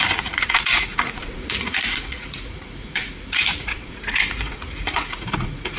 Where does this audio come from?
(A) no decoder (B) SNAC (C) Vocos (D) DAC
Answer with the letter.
C